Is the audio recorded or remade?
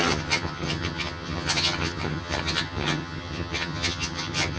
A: remade